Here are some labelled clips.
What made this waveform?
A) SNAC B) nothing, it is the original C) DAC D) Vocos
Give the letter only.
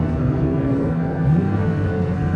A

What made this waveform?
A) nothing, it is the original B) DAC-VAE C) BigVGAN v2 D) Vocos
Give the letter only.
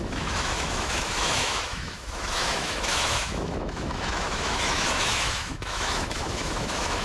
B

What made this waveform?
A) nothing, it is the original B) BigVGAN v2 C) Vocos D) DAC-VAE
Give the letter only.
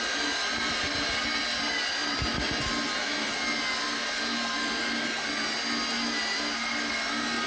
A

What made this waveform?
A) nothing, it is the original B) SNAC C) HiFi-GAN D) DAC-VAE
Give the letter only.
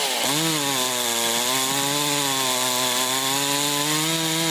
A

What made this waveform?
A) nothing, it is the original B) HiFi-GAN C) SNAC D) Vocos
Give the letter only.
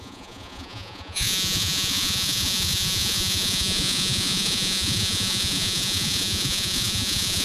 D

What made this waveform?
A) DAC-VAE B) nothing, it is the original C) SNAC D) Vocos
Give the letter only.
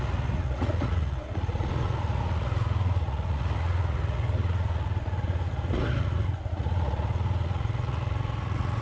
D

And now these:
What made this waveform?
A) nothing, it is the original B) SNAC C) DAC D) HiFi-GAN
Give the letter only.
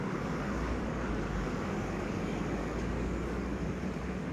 C